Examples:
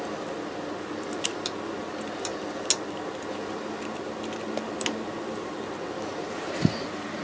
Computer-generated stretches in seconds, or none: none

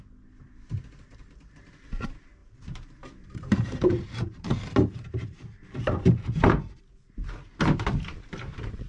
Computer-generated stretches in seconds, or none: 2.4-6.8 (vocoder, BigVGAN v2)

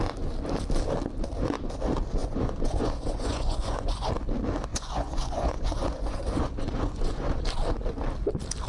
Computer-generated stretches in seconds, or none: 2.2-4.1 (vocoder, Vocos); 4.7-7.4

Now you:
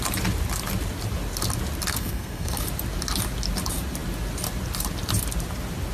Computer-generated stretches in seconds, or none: 1.9-2.6 (codec, SNAC)

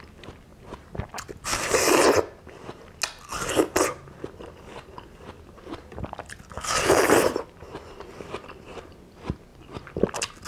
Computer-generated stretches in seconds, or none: 0.5-1.1 (vocoder, BigVGAN v2); 1.5-2.1; 7.6-8.9